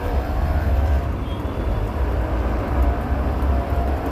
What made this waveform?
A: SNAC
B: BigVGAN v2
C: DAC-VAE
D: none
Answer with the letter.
B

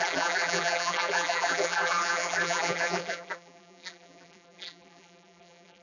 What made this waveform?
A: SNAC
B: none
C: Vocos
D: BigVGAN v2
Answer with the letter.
D